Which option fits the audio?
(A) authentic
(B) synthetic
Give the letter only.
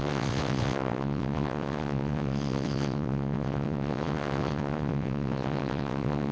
B